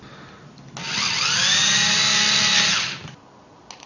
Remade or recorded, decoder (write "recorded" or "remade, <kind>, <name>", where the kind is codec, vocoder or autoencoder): recorded